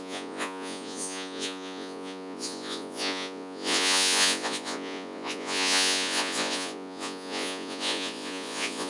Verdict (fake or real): fake